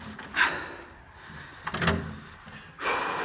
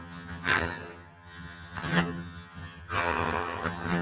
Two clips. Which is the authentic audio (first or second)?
first